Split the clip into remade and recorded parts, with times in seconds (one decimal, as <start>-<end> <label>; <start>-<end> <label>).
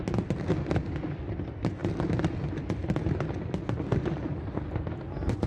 0.0-5.5 recorded